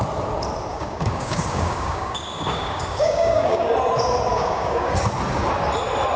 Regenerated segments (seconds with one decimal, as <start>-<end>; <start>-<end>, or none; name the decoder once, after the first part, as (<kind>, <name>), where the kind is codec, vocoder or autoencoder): 0.7-3.7 (codec, DAC); 4.3-4.9